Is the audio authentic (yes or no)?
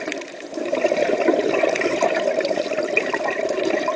no